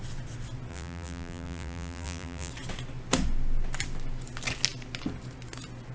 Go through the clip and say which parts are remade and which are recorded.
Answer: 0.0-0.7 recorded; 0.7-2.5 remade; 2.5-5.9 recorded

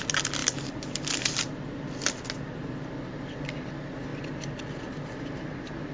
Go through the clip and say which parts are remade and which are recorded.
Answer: 0.0-0.4 recorded; 0.4-1.1 remade; 1.1-5.9 recorded

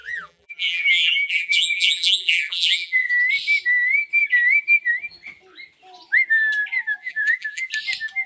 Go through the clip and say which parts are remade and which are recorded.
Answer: 0.0-3.1 remade; 3.1-7.0 recorded; 7.0-7.7 remade; 7.7-8.3 recorded

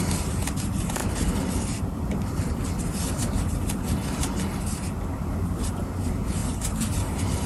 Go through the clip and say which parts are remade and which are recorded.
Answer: 0.0-1.0 recorded; 1.0-4.4 remade; 4.4-6.4 recorded; 6.4-7.5 remade

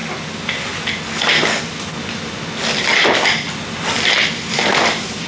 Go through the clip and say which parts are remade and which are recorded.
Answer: 0.0-5.3 recorded

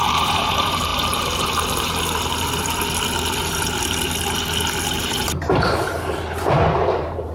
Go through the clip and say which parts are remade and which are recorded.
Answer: 0.0-0.9 remade; 0.9-5.0 recorded; 5.0-7.3 remade

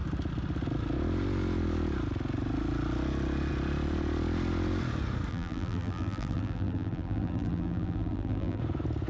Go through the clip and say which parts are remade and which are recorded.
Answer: 0.0-5.3 recorded; 5.3-8.6 remade; 8.6-9.1 recorded